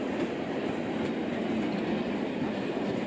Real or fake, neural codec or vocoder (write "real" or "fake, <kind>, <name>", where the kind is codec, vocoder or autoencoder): real